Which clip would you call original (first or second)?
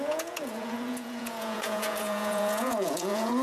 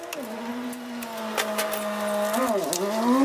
second